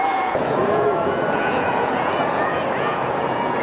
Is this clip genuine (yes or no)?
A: no